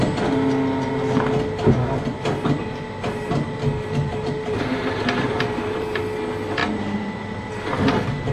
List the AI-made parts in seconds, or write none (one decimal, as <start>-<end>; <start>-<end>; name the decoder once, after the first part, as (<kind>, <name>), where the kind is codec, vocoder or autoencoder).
4.1-6.0 (vocoder, BigVGAN v2); 6.6-7.5